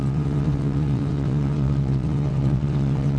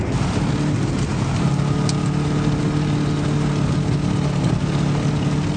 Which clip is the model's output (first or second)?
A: first